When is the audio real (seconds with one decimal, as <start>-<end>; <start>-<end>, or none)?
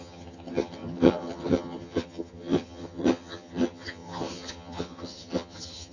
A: none